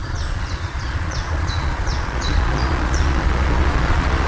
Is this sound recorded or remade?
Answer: remade